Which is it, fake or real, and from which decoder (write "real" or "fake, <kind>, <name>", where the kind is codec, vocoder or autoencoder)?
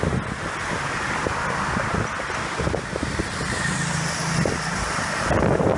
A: real